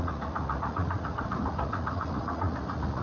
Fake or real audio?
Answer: fake